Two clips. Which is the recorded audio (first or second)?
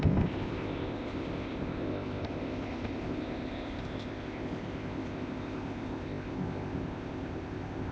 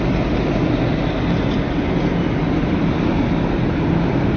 second